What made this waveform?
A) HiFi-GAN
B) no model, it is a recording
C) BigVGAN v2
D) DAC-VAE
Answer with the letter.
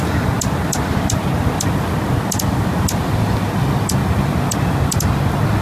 B